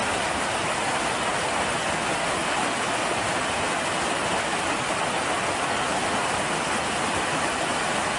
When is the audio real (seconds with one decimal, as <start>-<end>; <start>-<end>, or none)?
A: 0.0-5.9; 6.6-8.2